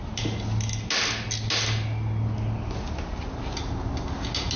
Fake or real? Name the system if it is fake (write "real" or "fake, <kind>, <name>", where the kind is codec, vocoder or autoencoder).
real